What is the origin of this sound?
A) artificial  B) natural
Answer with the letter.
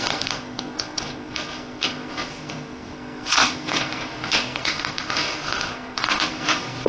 A